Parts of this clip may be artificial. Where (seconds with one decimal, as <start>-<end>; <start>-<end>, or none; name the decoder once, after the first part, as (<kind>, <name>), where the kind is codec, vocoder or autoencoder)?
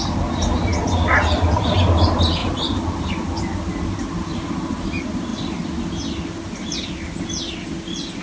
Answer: none